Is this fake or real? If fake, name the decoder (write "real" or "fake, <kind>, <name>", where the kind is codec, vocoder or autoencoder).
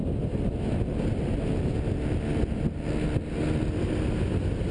real